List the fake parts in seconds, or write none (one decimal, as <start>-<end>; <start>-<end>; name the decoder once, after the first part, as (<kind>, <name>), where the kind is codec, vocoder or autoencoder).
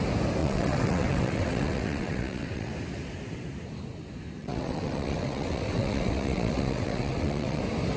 0.4-2.7 (vocoder, WaveNeXt); 4.4-7.6